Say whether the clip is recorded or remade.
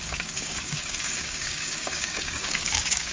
remade